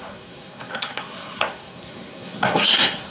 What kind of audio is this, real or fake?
fake